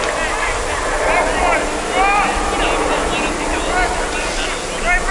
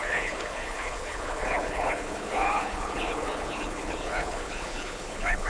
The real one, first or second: first